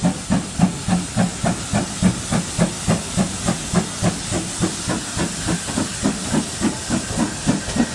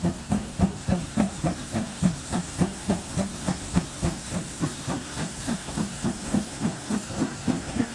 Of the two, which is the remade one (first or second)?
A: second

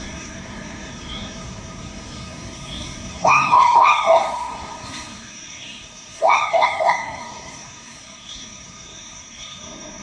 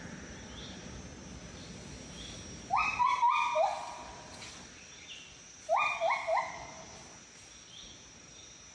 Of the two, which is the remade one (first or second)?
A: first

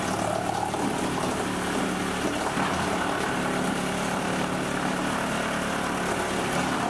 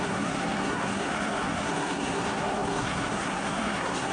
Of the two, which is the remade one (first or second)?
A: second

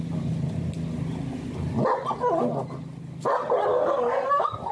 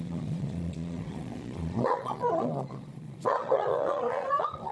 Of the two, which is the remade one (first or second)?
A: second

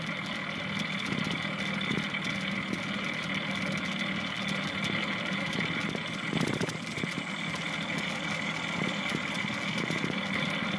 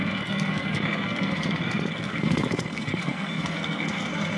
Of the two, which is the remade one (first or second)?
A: second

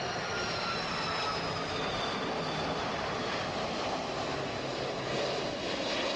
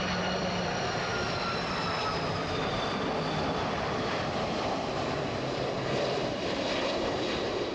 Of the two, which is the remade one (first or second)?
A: second